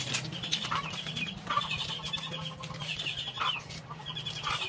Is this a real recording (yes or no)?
no